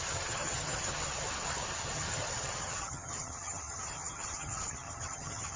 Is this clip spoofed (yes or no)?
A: yes